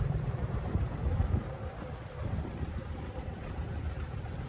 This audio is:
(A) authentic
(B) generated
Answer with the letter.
B